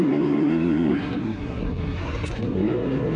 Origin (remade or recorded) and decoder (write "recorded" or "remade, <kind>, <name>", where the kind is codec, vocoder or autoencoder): remade, codec, SNAC